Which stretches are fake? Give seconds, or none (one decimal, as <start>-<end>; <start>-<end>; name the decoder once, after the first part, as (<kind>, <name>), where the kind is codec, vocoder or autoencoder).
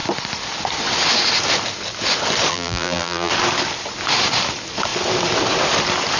2.5-3.3 (vocoder, BigVGAN v2)